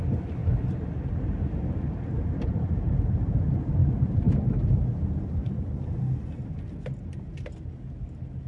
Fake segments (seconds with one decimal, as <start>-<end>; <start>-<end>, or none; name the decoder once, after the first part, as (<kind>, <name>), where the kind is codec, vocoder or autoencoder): none